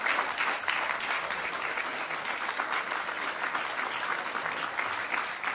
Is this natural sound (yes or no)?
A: yes